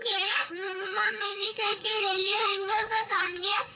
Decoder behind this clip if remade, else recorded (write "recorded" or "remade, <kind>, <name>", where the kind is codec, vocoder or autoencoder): remade, codec, SNAC